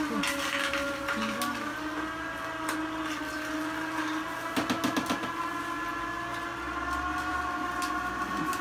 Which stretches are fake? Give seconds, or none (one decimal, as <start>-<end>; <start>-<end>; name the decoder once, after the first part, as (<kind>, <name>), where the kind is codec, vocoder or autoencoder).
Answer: none